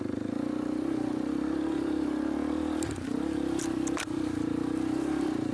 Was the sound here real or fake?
fake